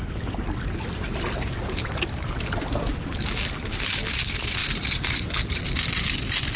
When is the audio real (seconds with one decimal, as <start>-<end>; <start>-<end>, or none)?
0.0-6.6